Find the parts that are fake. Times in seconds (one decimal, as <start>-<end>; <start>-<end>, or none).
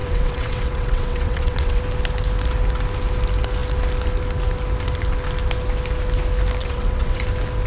0.0-1.8; 6.6-7.2